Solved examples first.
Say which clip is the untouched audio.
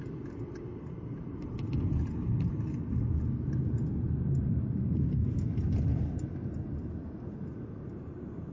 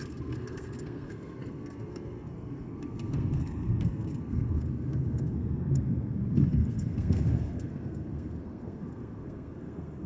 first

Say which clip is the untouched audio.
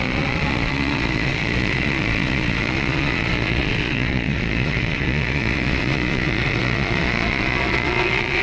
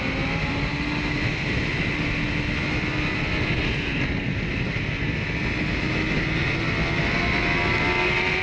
second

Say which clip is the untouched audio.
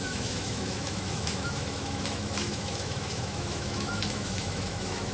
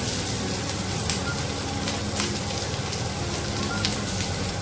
second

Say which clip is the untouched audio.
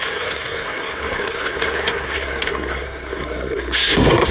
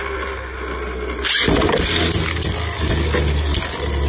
second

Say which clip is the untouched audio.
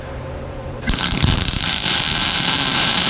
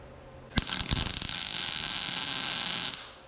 second